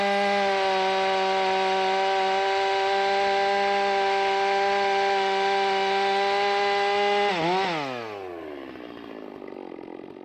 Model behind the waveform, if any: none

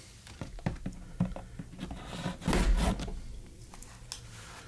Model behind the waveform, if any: none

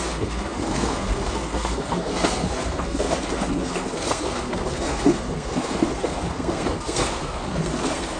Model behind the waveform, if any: codec, SNAC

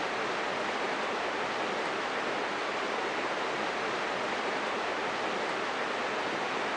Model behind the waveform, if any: none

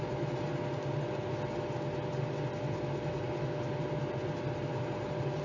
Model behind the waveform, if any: none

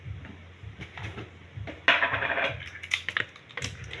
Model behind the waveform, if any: none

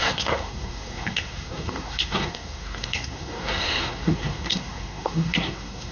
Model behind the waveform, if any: codec, SNAC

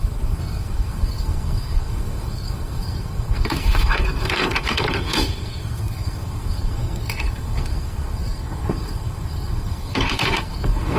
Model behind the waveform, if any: codec, SNAC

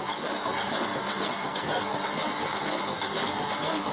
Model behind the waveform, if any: codec, SNAC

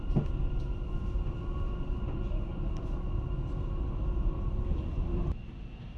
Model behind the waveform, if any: none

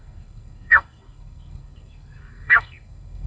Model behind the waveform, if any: codec, SNAC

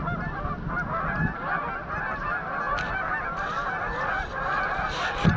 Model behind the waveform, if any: none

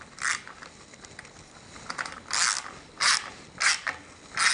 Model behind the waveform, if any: none